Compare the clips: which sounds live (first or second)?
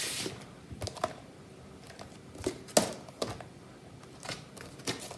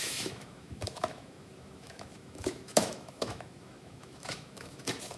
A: first